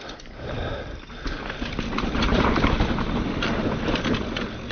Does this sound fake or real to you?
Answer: fake